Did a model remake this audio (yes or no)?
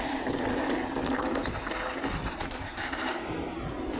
no